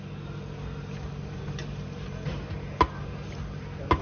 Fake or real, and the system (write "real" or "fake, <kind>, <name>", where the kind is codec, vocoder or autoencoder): real